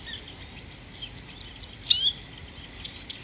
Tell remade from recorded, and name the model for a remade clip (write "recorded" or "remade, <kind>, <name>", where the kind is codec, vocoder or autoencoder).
recorded